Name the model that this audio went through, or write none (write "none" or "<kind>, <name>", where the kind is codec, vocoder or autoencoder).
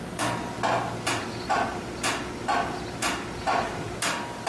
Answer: none